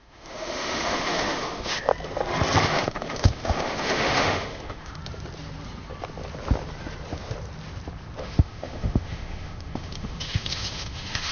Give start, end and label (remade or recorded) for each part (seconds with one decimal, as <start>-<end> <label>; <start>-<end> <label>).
0.0-1.9 remade; 1.9-2.6 recorded; 2.6-5.0 remade; 5.0-8.2 recorded; 8.2-11.3 remade